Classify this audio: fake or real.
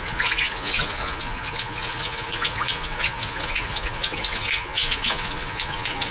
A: fake